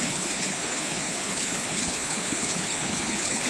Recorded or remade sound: remade